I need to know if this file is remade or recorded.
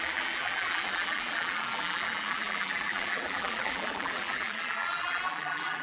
remade